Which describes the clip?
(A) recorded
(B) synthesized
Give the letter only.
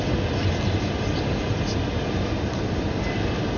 A